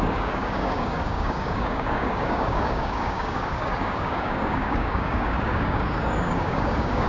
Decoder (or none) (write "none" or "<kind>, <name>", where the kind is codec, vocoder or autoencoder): codec, DAC